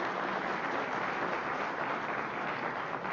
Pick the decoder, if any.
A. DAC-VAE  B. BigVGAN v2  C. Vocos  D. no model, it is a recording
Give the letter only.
D